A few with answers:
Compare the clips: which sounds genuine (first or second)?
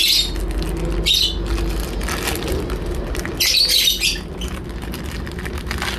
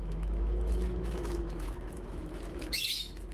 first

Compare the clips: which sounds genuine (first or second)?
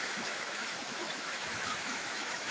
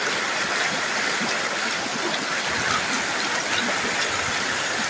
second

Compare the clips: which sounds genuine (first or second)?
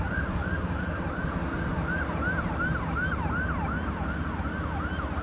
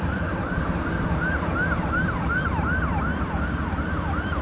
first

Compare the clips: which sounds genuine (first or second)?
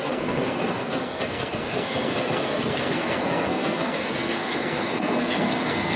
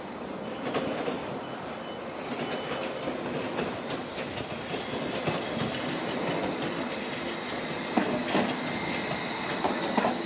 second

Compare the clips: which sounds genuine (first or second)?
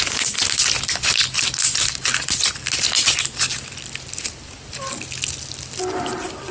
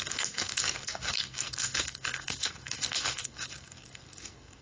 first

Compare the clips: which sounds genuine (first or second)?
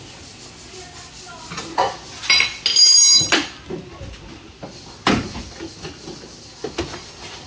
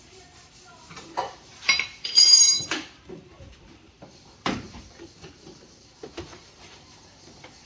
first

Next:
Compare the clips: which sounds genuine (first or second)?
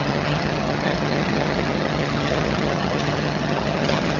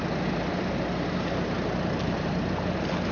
second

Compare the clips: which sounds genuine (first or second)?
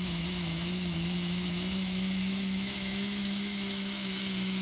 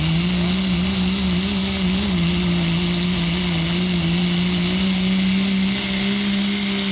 second